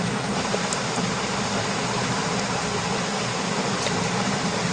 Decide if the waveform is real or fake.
real